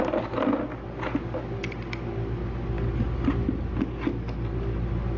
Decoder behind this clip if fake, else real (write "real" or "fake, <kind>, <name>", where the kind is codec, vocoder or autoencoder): real